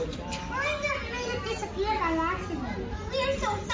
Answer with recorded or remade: recorded